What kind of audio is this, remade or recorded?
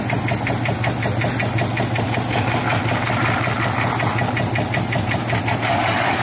recorded